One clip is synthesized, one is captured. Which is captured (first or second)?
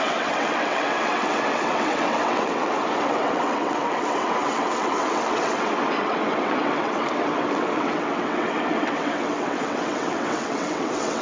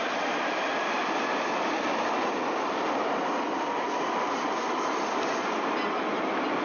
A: second